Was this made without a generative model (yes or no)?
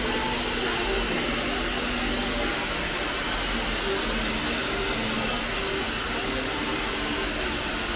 yes